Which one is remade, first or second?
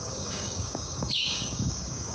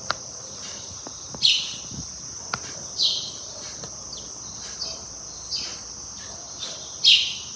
first